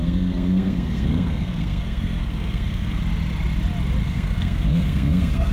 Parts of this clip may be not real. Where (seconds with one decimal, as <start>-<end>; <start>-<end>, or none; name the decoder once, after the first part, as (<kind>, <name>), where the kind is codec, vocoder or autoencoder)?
0.0-3.0 (codec, SNAC); 4.0-5.5